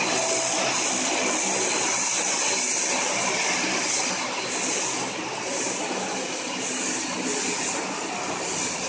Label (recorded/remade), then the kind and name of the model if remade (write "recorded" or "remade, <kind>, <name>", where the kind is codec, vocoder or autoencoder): recorded